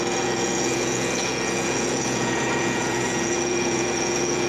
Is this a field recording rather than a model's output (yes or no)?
no